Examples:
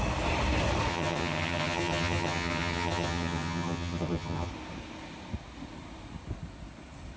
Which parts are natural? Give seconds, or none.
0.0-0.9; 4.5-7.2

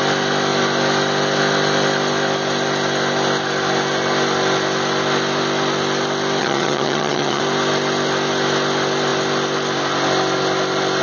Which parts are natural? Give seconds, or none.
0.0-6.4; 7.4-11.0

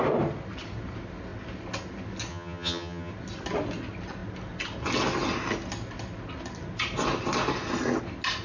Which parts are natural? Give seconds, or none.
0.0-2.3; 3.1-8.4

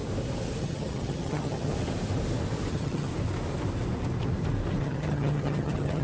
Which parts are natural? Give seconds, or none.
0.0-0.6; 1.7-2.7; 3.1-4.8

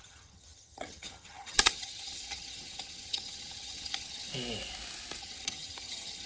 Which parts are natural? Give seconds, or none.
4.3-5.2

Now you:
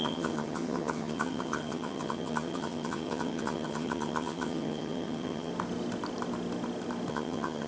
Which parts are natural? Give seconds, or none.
5.5-7.1

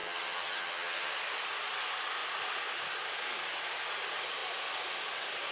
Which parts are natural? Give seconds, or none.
1.1-5.5

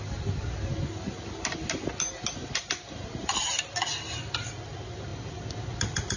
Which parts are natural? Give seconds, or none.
0.0-6.2